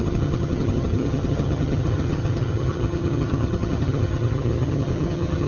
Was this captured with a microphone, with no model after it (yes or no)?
no